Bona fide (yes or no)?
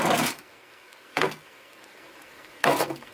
no